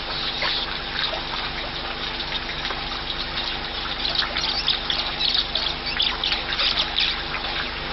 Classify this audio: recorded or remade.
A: recorded